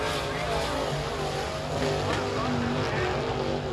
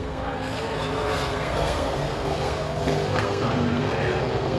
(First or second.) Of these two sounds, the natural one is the first